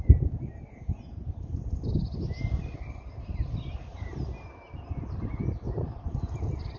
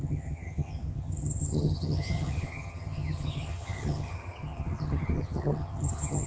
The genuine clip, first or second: first